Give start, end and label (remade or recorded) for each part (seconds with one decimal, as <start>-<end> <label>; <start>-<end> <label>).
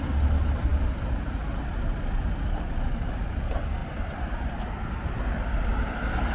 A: 0.0-6.3 recorded